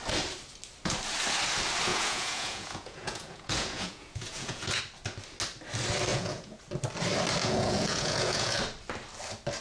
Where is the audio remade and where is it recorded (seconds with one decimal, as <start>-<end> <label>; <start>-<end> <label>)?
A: 0.0-1.9 recorded; 1.9-4.8 remade; 4.8-6.1 recorded; 6.1-6.6 remade; 6.6-7.4 recorded; 7.4-8.6 remade; 8.6-9.6 recorded